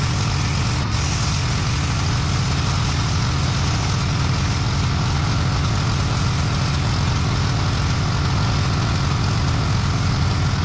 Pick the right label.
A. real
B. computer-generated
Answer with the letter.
A